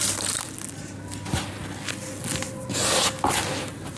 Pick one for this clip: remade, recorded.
recorded